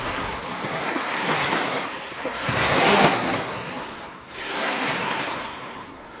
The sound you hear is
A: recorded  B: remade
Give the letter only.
B